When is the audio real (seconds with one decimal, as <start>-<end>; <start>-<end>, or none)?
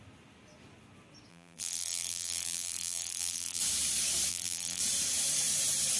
0.0-1.3; 3.6-4.3; 4.8-6.0